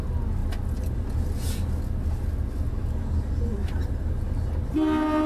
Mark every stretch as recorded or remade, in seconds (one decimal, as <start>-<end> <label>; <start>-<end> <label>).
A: 0.0-5.3 recorded

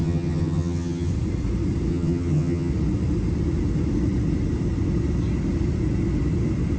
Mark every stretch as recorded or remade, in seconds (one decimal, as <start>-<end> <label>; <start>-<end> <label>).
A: 0.0-1.1 remade; 1.1-1.9 recorded; 1.9-2.7 remade; 2.7-6.8 recorded

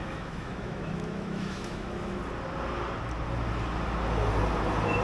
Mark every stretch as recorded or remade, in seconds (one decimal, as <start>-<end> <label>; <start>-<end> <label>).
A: 0.0-2.2 remade; 2.2-5.0 recorded

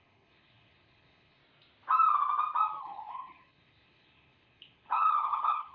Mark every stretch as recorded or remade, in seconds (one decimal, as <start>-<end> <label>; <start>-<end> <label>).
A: 0.0-1.4 remade; 1.4-2.8 recorded; 2.8-5.7 remade

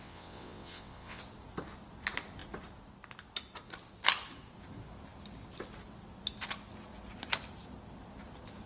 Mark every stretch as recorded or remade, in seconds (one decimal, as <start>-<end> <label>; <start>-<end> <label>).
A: 0.0-1.2 remade; 1.2-8.7 recorded

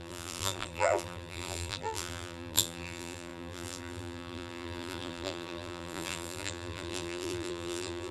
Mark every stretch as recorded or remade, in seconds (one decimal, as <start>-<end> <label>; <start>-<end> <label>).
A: 0.0-8.1 remade

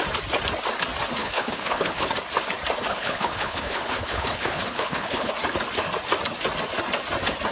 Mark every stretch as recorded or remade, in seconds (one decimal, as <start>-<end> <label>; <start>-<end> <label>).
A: 0.0-1.2 recorded; 1.2-2.1 remade; 2.1-2.9 recorded; 2.9-5.3 remade; 5.3-7.5 recorded